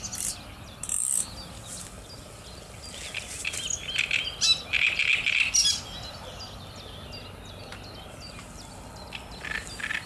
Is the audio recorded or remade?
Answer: recorded